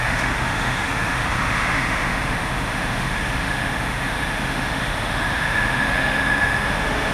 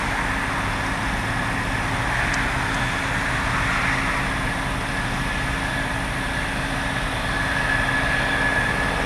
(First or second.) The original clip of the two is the second